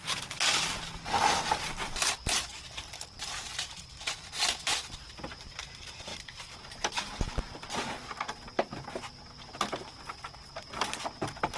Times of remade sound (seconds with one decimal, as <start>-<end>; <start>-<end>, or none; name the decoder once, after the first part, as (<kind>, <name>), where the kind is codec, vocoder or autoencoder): 2.5-4.2 (vocoder, BigVGAN v2); 6.1-7.4